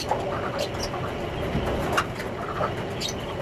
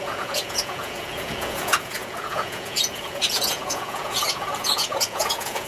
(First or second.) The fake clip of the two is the second